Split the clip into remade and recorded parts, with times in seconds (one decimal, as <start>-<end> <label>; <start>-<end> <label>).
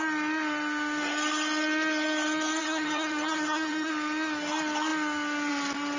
0.0-2.6 recorded; 2.6-3.9 remade; 3.9-6.0 recorded